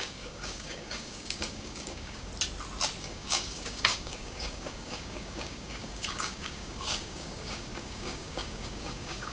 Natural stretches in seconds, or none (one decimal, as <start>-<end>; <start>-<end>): 2.3-3.0